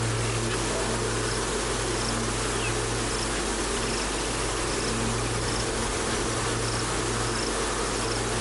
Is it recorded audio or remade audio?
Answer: recorded